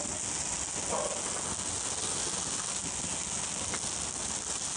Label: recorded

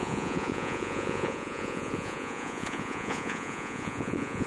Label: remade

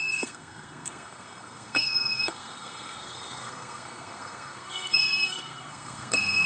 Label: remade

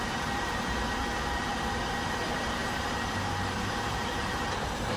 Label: remade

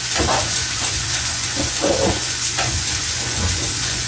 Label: remade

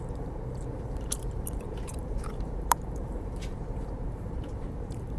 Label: remade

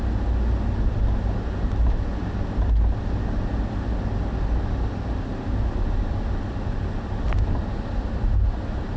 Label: recorded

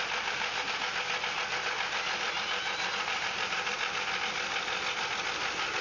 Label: recorded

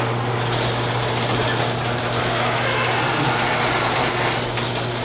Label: recorded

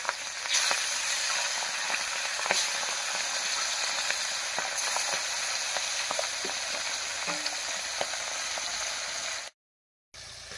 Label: recorded